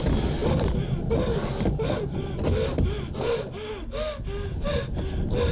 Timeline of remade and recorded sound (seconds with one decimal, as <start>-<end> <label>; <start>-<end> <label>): 0.0-5.5 recorded